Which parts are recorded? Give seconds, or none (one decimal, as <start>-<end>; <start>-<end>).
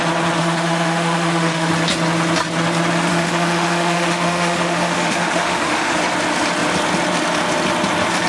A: 0.0-0.4; 1.7-3.1; 5.9-8.3